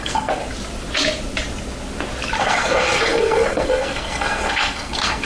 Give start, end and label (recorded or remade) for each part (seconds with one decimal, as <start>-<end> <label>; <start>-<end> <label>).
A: 0.0-0.4 remade; 0.4-2.4 recorded; 2.4-5.3 remade